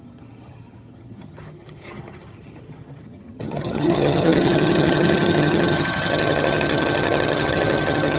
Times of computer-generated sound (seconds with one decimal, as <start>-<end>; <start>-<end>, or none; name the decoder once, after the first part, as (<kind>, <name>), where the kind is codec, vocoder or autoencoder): 0.0-8.2 (vocoder, HiFi-GAN)